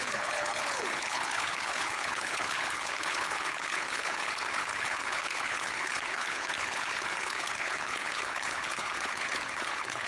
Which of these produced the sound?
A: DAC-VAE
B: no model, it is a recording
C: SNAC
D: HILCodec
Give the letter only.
D